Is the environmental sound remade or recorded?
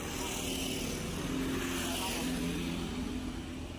recorded